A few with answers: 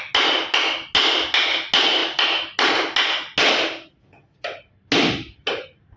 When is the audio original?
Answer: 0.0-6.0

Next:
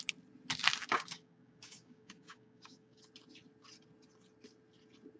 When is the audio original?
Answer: 0.0-0.8; 3.0-5.2

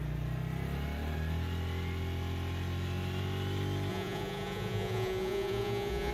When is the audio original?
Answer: 0.0-3.9

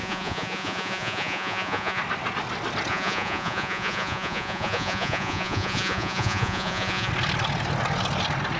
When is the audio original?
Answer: 2.0-2.9; 7.1-8.6

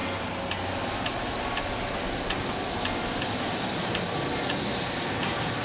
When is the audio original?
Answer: 0.0-5.6

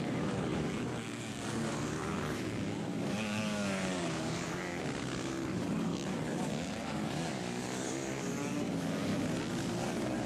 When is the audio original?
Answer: 9.1-9.7

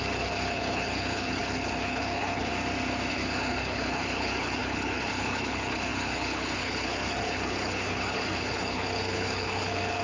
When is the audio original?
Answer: 2.5-3.1

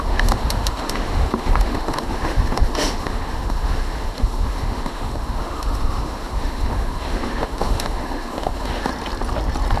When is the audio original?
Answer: 8.9-9.8